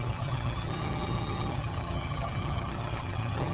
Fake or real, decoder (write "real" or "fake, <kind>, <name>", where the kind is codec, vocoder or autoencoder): fake, vocoder, HiFi-GAN